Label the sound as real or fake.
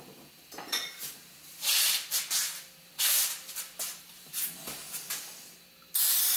real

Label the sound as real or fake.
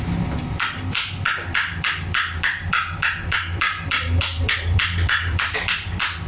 fake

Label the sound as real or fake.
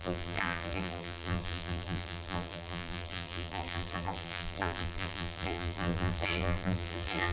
fake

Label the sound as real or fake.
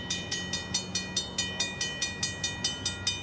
real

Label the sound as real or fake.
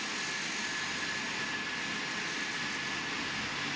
real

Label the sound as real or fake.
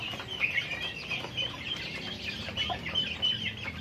fake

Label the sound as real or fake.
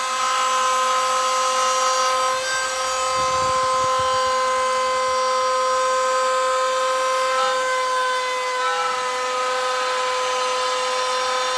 real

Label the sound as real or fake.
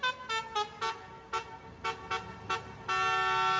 real